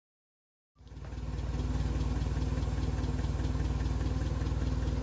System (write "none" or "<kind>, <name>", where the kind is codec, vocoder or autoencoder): none